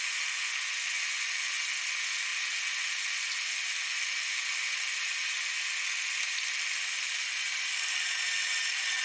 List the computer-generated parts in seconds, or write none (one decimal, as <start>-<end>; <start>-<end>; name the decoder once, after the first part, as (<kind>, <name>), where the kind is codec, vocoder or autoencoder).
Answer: none